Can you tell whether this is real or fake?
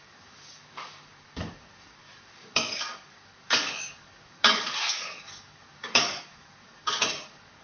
fake